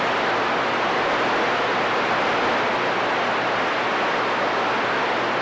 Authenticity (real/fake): real